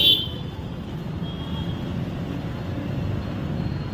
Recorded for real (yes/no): yes